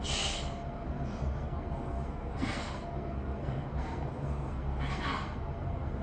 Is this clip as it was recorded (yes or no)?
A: no